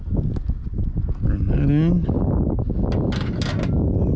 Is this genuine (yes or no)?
yes